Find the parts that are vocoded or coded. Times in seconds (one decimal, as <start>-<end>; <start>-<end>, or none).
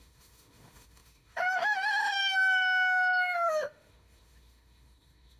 0.0-5.4